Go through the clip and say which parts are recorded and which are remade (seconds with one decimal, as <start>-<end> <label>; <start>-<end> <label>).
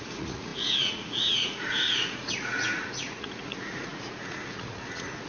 0.0-5.3 remade